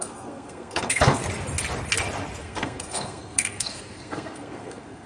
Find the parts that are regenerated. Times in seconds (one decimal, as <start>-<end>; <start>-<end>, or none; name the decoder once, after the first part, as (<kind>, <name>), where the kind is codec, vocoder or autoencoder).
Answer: 0.0-1.2 (codec, SNAC); 2.4-5.1